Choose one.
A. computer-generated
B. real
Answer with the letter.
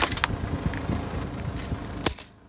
B